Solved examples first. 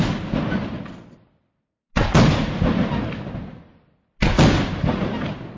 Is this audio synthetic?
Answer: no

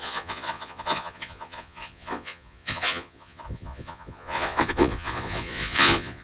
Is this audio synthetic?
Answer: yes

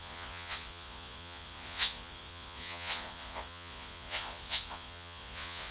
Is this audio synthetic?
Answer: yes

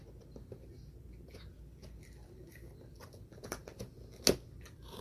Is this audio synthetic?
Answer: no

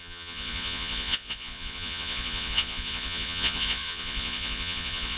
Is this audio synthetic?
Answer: yes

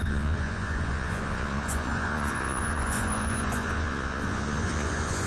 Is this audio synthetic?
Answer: yes